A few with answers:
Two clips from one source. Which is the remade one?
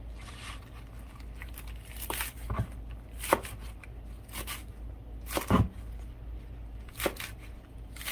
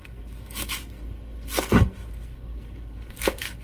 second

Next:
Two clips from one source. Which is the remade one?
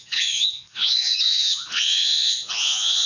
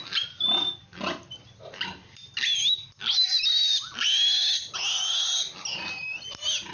first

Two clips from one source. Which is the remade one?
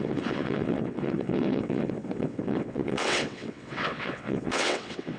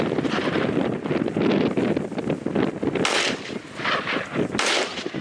first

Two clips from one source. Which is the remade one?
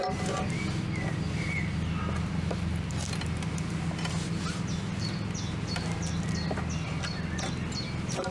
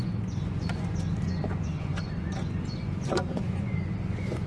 second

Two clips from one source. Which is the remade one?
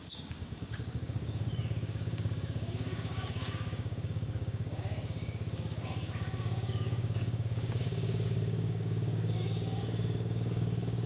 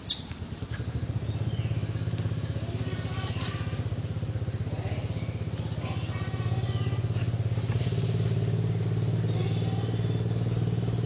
first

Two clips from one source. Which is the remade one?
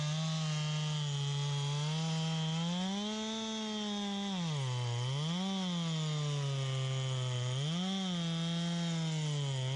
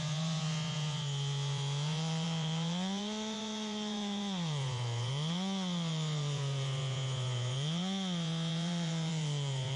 second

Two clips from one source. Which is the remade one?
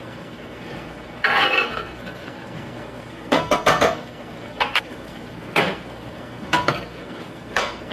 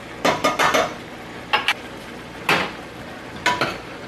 first